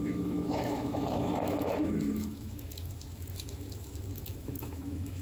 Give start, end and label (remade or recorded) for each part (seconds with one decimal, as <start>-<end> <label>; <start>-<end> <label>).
0.0-5.2 remade